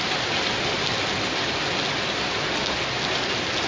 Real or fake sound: real